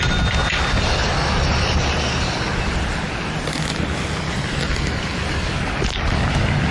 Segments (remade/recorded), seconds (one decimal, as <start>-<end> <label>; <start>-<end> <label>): 0.0-6.7 recorded